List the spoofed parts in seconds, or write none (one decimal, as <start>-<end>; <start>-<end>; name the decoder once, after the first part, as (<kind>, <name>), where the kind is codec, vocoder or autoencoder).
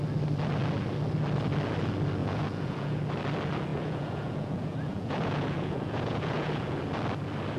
2.2-3.0 (vocoder, Vocos); 3.7-6.8